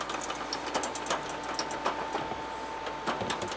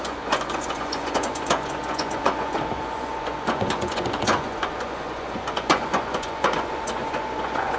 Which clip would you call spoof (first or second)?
second